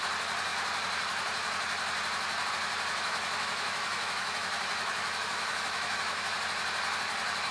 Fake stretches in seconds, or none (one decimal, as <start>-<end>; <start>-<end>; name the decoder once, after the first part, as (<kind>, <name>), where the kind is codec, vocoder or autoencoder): 3.1-6.4 (autoencoder, DAC-VAE)